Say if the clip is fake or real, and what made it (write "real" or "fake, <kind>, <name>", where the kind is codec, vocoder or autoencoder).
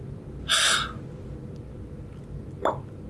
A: real